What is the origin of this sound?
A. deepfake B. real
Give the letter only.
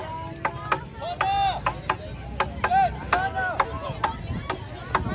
B